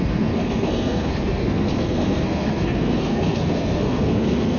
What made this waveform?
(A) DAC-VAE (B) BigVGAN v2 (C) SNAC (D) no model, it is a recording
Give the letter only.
C